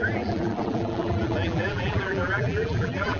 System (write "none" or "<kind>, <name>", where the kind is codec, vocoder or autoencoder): vocoder, BigVGAN v2